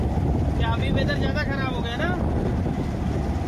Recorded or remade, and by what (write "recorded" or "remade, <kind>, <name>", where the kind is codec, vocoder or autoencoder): recorded